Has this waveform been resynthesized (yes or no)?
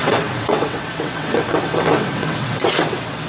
yes